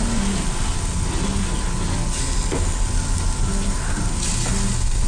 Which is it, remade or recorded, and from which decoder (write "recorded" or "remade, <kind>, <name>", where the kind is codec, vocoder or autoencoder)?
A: recorded